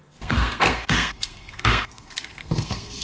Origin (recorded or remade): remade